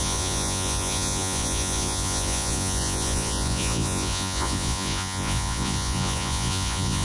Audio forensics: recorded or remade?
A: remade